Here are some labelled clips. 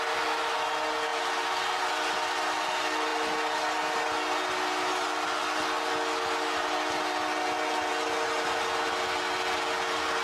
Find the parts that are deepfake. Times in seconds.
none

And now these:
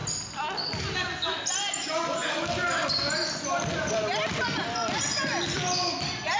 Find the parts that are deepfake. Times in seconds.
none

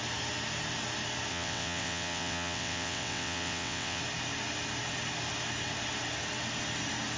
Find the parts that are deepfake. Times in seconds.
1.3-4.0

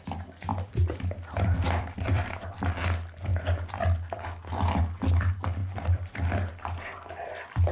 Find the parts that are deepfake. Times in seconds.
0.5-2.5; 5.6-6.2

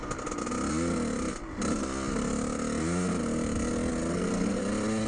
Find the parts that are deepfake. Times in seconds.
4.1-4.6

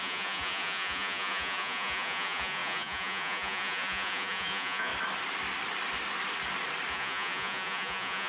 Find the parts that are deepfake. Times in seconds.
0.0-4.9; 6.9-8.3

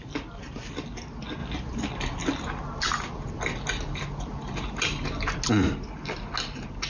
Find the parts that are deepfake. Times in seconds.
none